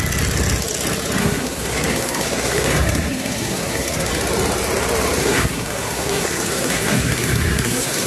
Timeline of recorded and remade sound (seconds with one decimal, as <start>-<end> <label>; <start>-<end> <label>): 0.0-1.2 recorded; 1.2-4.1 remade; 4.1-5.2 recorded; 5.2-8.1 remade